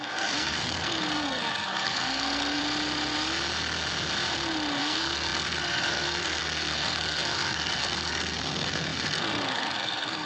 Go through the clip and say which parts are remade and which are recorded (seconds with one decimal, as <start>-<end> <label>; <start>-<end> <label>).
0.0-2.6 remade; 2.6-4.8 recorded; 4.8-10.3 remade